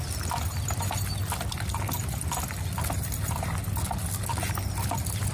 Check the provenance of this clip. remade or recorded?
recorded